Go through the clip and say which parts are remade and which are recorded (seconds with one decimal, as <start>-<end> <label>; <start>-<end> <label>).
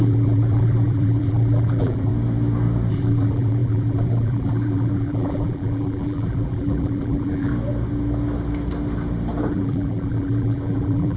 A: 0.0-2.1 remade; 2.1-2.9 recorded; 2.9-7.5 remade; 7.5-9.5 recorded; 9.5-11.2 remade